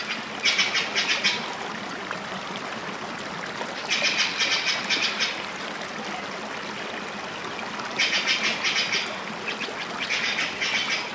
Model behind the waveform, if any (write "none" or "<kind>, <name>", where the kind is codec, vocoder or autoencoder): none